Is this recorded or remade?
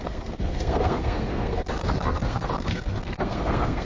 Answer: remade